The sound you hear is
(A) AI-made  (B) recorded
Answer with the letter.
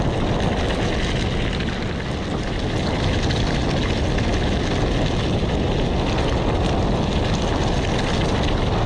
B